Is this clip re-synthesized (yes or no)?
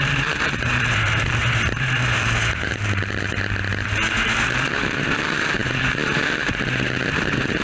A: yes